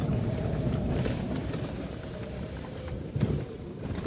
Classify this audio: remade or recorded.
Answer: remade